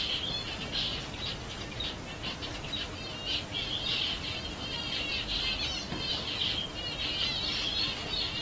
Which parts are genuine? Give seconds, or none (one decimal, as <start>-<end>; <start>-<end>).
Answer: 0.0-8.4

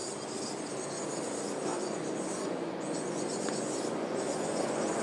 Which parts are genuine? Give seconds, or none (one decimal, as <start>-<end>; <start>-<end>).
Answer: 0.0-1.7

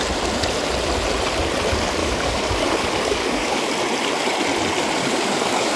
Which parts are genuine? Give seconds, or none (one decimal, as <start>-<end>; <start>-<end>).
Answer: 0.0-2.0; 3.7-5.0

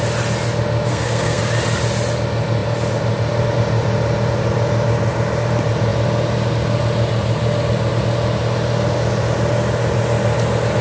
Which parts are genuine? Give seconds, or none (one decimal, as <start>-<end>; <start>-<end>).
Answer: 0.0-0.9; 1.4-10.8

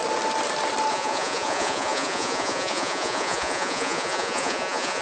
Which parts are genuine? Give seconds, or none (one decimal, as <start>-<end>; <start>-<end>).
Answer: 0.0-0.9

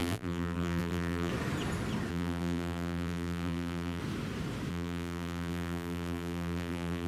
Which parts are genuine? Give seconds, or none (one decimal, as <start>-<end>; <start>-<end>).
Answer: 1.3-2.1; 4.0-4.7

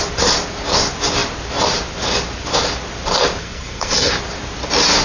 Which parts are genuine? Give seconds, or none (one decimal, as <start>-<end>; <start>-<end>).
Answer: 0.0-3.4; 4.1-5.0

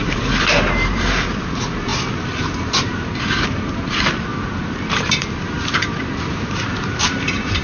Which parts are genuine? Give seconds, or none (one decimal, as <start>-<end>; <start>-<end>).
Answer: 1.9-2.6